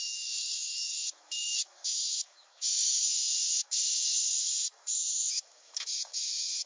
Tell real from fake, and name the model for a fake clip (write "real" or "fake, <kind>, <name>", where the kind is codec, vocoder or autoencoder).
fake, autoencoder, DAC-VAE